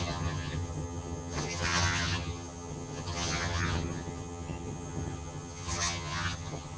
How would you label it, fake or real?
fake